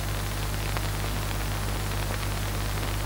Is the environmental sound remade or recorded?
recorded